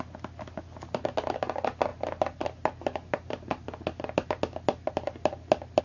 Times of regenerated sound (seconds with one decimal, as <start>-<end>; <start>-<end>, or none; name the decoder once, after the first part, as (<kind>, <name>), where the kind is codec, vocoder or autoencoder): none